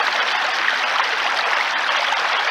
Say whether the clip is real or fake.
real